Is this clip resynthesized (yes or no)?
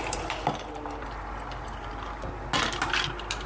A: no